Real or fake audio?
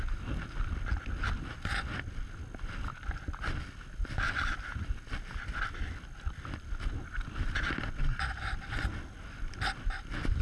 real